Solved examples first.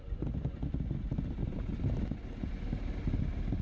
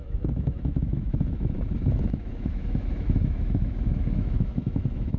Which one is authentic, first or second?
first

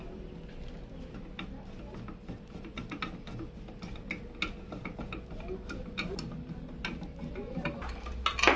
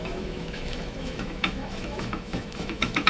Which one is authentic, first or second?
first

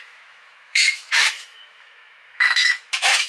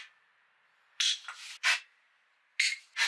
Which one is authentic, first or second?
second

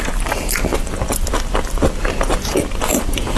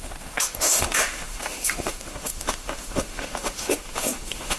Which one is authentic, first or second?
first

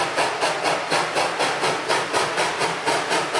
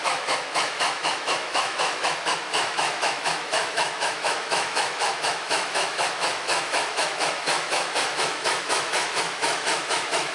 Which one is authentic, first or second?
first